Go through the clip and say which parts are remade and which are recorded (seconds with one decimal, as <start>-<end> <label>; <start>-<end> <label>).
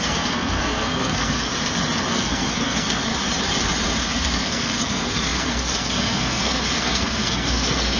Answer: 0.0-1.5 remade; 1.5-2.1 recorded; 2.1-3.1 remade; 3.1-4.0 recorded; 4.0-8.0 remade